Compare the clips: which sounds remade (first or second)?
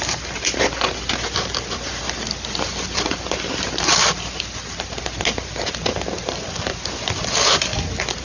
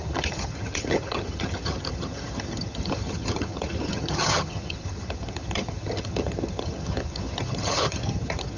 second